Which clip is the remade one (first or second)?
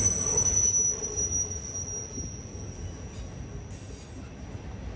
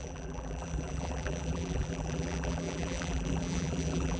second